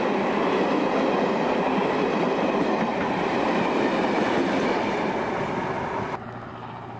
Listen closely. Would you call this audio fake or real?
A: real